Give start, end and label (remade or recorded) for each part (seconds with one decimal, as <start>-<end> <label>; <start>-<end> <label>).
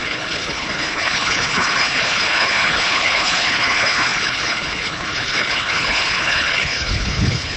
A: 0.0-7.6 remade